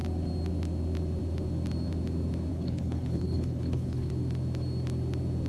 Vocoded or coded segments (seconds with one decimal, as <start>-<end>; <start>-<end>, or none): 2.5-4.1